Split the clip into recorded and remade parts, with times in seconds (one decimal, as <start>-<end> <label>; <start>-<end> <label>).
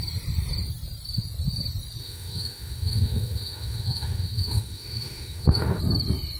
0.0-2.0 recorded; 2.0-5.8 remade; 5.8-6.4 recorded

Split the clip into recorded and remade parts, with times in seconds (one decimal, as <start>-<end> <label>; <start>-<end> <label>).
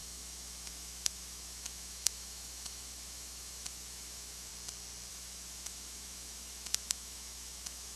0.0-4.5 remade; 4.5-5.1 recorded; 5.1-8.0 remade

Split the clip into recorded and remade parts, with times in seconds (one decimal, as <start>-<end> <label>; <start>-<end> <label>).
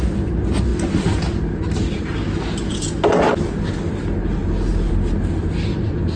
0.0-6.2 recorded